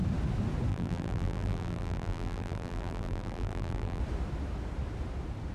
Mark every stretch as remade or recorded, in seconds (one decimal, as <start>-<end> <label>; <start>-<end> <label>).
0.0-0.7 recorded; 0.7-4.0 remade; 4.0-5.5 recorded